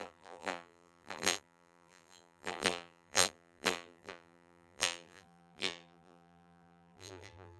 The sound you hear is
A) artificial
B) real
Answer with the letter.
A